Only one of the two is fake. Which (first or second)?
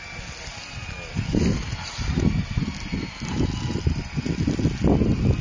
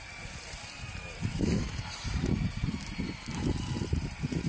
second